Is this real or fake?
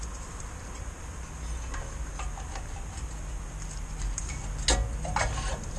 real